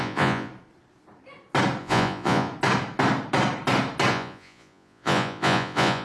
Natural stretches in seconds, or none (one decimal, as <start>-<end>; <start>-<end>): 0.5-1.8; 2.5-4.1